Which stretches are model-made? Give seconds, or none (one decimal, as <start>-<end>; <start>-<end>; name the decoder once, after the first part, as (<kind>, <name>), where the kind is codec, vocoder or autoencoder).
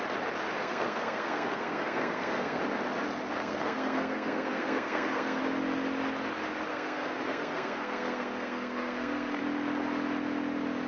0.6-2.6 (codec, SNAC); 3.4-5.4; 6.7-9.4